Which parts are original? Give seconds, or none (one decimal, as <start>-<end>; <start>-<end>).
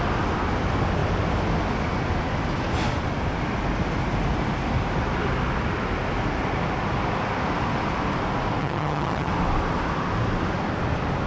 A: 0.0-8.6; 9.3-11.3